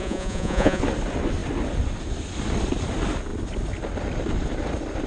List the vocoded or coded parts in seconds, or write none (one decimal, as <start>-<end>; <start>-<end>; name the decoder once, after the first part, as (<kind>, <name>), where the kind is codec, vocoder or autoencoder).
0.0-0.8 (vocoder, Vocos)